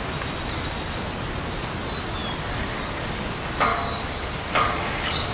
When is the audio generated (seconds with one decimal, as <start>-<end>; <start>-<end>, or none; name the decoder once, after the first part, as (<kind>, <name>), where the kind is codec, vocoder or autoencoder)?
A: none